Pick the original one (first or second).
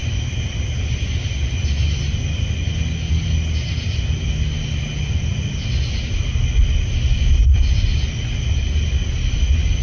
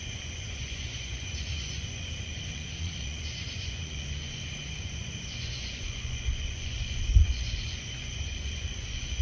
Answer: first